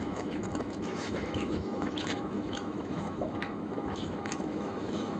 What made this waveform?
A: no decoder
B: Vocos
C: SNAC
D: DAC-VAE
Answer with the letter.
D